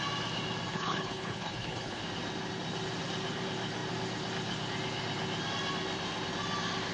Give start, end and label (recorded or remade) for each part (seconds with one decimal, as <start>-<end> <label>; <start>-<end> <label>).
0.0-0.7 recorded; 0.7-2.0 remade; 2.0-6.9 recorded